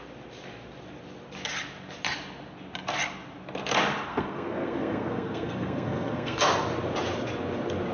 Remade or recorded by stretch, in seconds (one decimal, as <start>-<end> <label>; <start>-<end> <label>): 0.0-4.1 recorded; 4.1-6.4 remade; 6.4-7.9 recorded